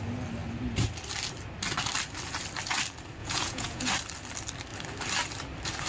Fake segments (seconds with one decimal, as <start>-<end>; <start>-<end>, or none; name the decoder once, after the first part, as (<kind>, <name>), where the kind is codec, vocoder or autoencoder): 3.2-3.9 (vocoder, Vocos)